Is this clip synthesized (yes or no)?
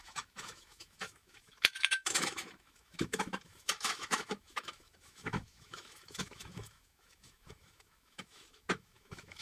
yes